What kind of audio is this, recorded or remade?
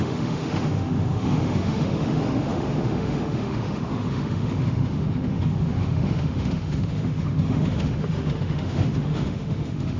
remade